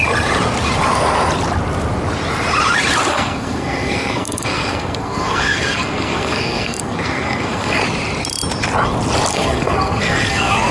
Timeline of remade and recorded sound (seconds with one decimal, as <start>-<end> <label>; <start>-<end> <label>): 0.0-3.1 recorded; 3.1-7.8 remade; 7.8-9.3 recorded; 9.3-10.7 remade